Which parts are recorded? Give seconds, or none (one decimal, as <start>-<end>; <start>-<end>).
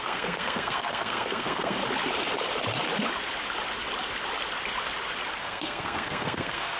1.8-5.4